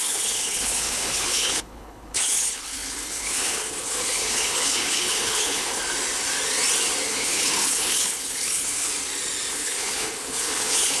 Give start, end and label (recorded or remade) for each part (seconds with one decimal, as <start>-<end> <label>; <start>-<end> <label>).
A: 0.0-5.8 remade; 5.8-7.1 recorded; 7.1-8.9 remade; 8.9-9.5 recorded; 9.5-11.0 remade

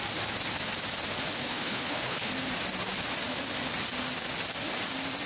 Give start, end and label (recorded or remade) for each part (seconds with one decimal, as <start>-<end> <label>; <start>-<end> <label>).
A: 0.0-1.5 recorded; 1.5-2.3 remade; 2.3-5.3 recorded

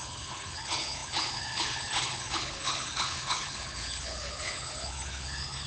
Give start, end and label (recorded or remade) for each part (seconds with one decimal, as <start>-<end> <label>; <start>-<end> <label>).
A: 0.0-5.7 remade

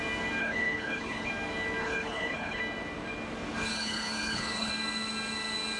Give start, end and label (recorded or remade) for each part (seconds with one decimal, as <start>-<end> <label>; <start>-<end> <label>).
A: 0.0-0.4 recorded; 0.4-1.3 remade; 1.3-1.8 recorded; 1.8-2.6 remade; 2.6-3.6 recorded; 3.6-4.7 remade; 4.7-5.8 recorded

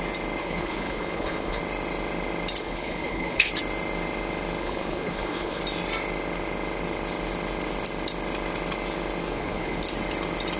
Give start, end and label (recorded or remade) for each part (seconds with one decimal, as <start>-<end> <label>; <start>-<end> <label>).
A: 0.0-0.4 recorded; 0.4-1.6 remade; 1.6-2.6 recorded; 2.6-3.5 remade; 3.5-4.6 recorded; 4.6-5.6 remade; 5.6-9.2 recorded; 9.2-9.8 remade; 9.8-10.6 recorded